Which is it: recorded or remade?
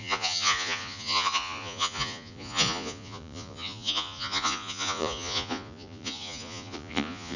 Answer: remade